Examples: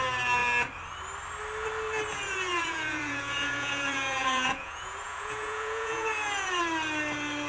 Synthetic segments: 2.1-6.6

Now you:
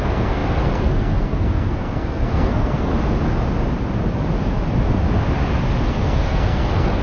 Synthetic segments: 0.0-2.9; 5.9-7.0

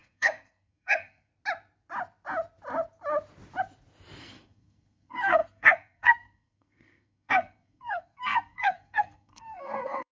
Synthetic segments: 0.0-1.3; 4.2-10.1

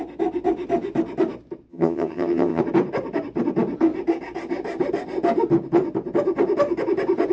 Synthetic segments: 1.7-2.6

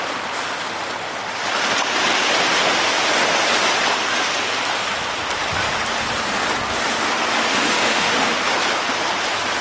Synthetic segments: 7.5-8.4